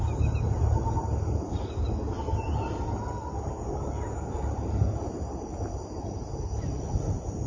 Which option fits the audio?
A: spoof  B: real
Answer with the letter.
B